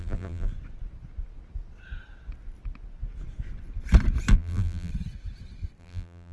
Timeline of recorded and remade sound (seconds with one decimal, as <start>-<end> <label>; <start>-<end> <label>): 0.0-0.5 remade; 0.5-4.3 recorded; 4.3-4.9 remade; 4.9-5.8 recorded; 5.8-6.3 remade